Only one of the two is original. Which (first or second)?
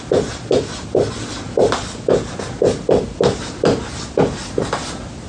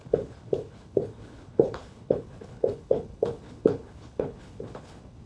first